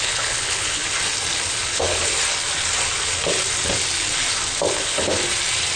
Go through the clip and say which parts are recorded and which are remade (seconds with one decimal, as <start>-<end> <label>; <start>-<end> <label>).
0.0-0.8 remade; 0.8-1.5 recorded; 1.5-2.1 remade; 2.1-4.7 recorded; 4.7-5.2 remade; 5.2-5.8 recorded